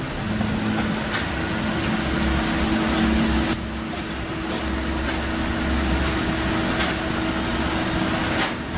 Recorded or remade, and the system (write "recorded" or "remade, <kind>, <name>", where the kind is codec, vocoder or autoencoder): recorded